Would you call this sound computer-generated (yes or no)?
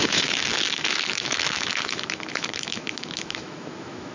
yes